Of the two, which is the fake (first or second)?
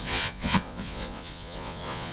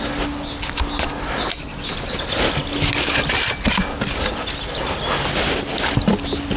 first